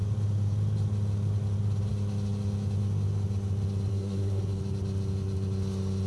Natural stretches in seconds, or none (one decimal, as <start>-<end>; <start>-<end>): 0.0-3.9; 4.6-6.1